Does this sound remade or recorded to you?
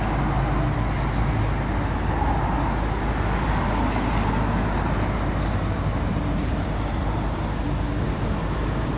recorded